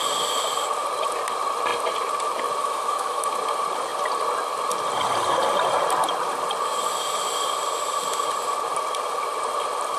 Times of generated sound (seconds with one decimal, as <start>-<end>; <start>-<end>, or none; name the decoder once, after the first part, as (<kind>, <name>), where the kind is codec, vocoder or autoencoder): 2.6-3.3 (autoencoder, DAC-VAE)